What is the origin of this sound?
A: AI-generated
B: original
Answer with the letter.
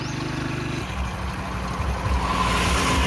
B